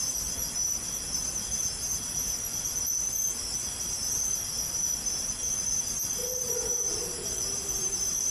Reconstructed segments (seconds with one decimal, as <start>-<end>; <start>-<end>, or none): none